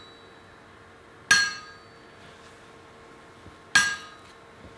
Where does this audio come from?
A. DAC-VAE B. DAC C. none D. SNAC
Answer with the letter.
C